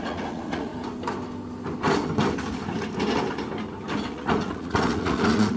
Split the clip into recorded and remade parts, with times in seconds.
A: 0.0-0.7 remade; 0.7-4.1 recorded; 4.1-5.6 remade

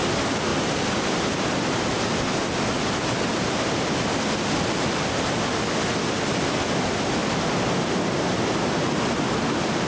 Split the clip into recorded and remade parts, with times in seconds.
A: 0.0-9.9 recorded

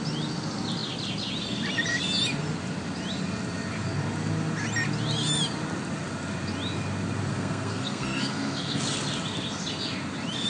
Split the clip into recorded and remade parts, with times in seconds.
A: 0.0-7.3 recorded; 7.3-8.8 remade; 8.8-10.5 recorded

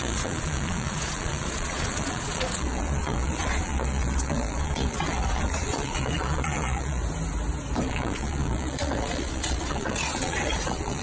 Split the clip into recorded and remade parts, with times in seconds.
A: 0.0-7.0 remade; 7.0-7.8 recorded; 7.8-11.0 remade

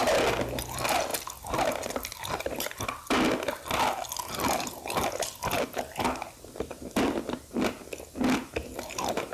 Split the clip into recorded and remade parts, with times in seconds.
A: 0.0-9.3 recorded

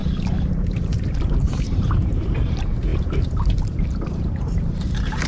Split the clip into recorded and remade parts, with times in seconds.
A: 0.0-0.5 recorded; 0.5-5.3 remade

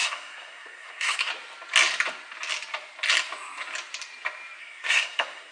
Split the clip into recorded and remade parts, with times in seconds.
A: 0.0-1.3 remade; 1.3-4.6 recorded; 4.6-5.5 remade